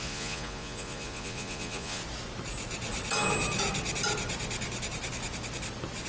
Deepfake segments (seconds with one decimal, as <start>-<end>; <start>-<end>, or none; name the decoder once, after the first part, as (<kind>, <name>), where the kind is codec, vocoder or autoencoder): 0.0-2.0 (vocoder, Vocos)